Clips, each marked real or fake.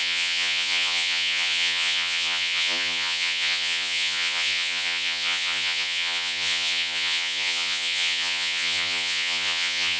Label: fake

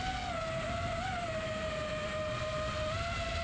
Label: real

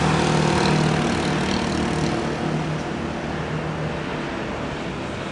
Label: real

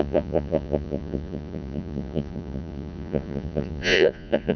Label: fake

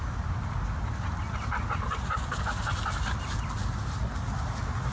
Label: real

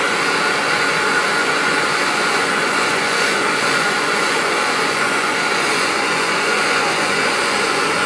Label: fake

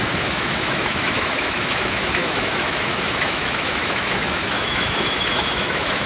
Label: fake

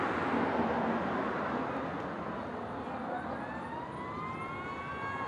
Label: real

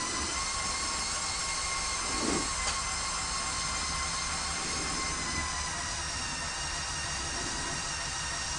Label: real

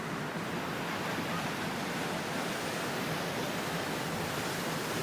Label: real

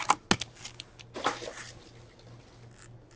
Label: real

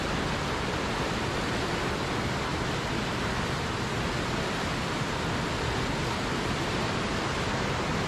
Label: real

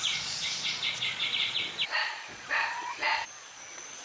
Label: fake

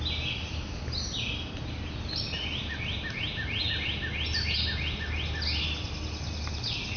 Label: real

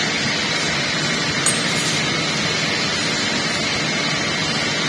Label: real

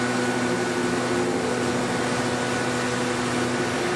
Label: real